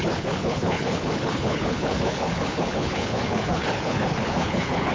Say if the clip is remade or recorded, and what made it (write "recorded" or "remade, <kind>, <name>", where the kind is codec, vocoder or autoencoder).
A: remade, codec, HILCodec